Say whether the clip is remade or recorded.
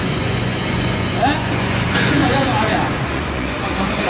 remade